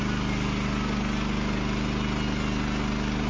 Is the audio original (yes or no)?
yes